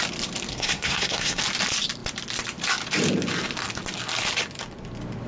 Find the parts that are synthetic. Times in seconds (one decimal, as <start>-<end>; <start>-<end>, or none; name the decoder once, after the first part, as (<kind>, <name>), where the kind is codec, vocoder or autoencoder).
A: 0.5-1.4 (codec, SNAC)